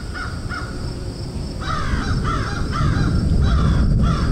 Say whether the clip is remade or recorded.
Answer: recorded